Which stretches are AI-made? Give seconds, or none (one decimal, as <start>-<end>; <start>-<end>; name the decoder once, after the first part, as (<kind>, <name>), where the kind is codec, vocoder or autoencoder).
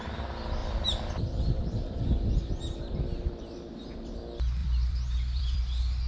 0.6-2.0 (vocoder, BigVGAN v2); 4.6-5.6